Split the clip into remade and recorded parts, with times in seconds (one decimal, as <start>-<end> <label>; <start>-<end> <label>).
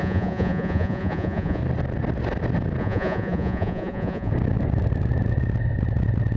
0.0-1.6 remade; 1.6-2.8 recorded; 2.8-4.3 remade; 4.3-6.4 recorded